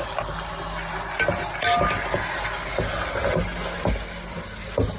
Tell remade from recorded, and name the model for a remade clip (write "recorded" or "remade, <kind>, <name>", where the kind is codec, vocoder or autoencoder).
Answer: recorded